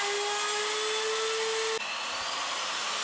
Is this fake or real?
real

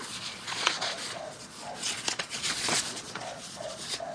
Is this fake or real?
fake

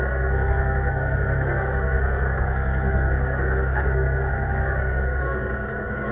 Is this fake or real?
fake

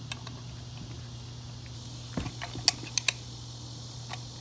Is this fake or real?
real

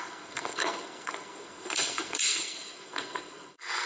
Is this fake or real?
fake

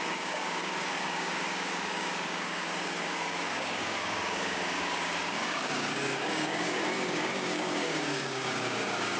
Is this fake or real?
fake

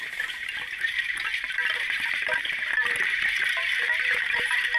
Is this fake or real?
fake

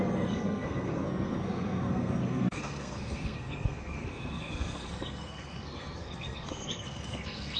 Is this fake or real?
fake